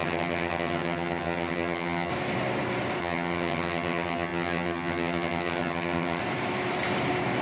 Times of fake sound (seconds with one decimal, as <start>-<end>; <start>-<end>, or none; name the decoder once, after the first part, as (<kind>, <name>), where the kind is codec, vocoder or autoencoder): 0.0-2.1 (vocoder, HiFi-GAN); 3.0-6.2